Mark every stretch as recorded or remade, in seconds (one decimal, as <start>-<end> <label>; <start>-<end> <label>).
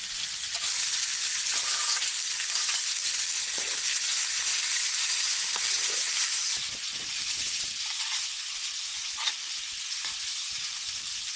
0.0-4.8 recorded; 4.8-5.7 remade; 5.7-10.7 recorded; 10.7-11.4 remade